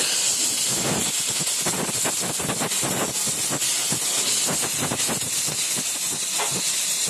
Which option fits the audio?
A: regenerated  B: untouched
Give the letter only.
B